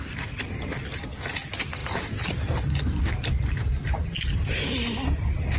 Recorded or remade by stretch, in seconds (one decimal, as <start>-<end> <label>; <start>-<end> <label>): 0.0-5.6 recorded